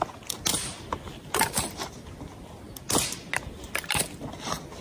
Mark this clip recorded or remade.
recorded